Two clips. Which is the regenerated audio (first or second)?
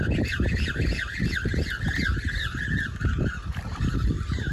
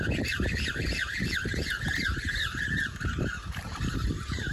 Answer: second